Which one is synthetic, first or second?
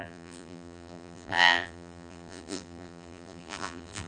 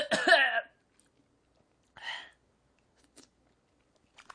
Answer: first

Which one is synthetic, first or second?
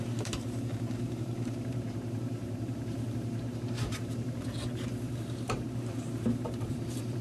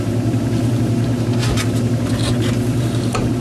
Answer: first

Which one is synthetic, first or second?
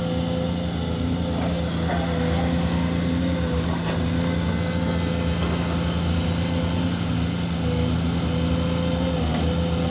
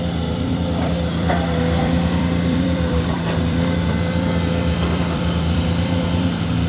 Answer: second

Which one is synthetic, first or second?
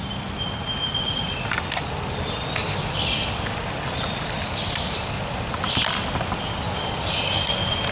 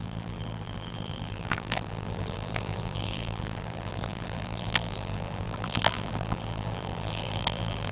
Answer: second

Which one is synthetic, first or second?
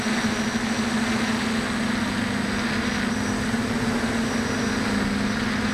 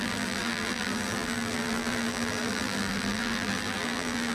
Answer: second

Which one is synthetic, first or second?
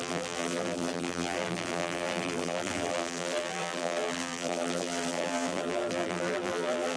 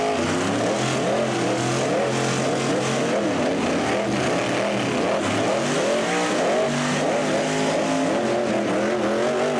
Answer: first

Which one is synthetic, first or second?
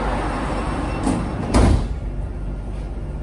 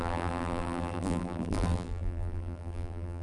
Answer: second